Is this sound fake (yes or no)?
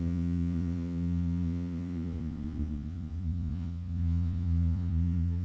yes